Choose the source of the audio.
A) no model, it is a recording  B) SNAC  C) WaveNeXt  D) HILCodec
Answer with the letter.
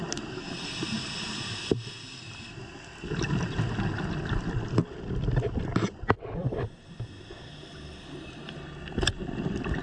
A